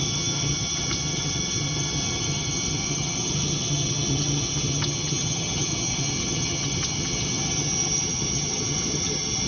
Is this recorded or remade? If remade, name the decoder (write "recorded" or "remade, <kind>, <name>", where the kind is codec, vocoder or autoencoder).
remade, vocoder, HiFi-GAN